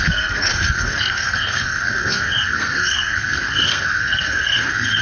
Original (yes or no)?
no